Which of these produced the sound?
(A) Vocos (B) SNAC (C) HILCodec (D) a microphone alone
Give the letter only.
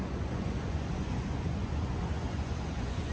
A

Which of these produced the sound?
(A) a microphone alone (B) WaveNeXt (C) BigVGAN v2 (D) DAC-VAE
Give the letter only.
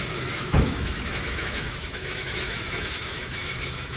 D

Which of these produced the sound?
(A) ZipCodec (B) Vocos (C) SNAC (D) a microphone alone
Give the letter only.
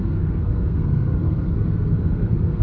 C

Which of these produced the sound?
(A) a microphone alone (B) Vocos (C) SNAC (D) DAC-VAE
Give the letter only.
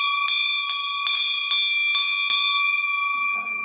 A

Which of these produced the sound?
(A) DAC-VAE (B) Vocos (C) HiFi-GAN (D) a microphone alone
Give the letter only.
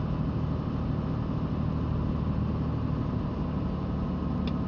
D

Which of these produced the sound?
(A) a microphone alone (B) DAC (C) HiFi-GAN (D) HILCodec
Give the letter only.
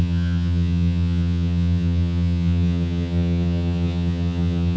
C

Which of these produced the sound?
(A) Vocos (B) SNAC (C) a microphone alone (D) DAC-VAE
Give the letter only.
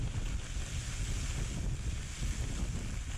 C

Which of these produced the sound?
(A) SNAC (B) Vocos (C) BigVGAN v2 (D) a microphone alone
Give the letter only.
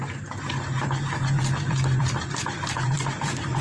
C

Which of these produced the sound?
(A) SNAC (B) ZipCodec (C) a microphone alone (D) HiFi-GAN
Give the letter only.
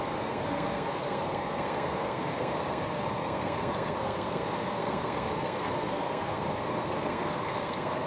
A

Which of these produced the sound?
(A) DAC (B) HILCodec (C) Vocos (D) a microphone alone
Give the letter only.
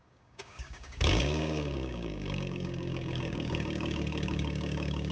A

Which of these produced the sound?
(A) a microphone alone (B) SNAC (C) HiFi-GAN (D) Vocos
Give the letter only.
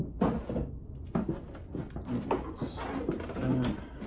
A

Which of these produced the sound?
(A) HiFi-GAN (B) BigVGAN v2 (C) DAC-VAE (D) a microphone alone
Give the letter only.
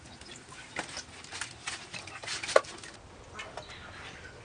D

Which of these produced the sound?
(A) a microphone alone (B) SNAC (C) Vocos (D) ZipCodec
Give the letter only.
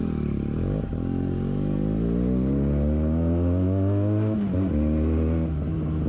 A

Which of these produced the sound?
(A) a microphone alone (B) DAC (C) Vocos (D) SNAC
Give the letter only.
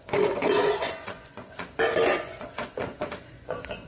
C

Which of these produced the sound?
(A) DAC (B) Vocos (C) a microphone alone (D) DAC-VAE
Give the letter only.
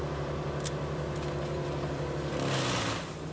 C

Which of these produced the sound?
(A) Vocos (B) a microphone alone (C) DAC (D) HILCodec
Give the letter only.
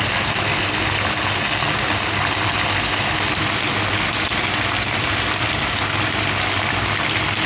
B